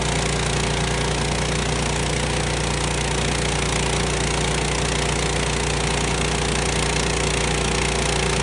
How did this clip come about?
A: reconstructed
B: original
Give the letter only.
B